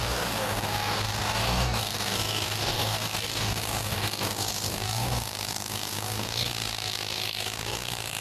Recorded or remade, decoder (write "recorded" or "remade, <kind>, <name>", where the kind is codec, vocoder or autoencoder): remade, codec, DAC